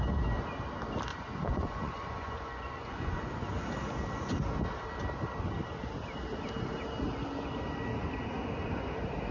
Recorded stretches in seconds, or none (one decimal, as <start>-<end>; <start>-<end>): 0.0-1.1; 3.5-9.3